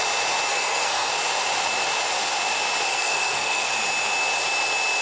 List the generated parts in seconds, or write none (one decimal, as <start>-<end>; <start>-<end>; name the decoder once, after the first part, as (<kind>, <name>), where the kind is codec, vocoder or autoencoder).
0.5-1.1 (codec, SNAC); 2.9-3.7